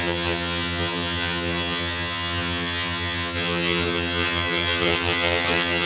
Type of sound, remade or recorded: remade